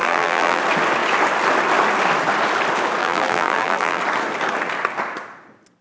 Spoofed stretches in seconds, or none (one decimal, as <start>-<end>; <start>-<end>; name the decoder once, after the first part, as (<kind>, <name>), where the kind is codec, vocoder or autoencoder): 0.0-0.6 (vocoder, BigVGAN v2); 3.0-4.0